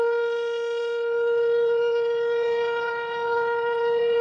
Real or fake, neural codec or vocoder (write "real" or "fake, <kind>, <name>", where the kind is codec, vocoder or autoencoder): fake, vocoder, Vocos